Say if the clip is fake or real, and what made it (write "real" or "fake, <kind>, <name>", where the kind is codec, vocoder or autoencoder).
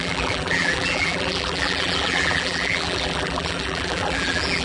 fake, vocoder, BigVGAN v2